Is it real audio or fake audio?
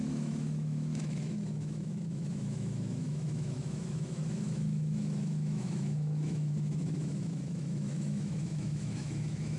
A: fake